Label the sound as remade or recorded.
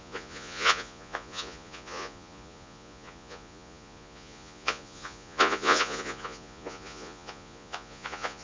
remade